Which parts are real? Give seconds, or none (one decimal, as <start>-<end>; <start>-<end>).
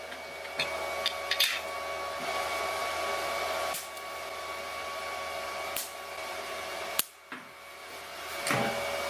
0.0-9.1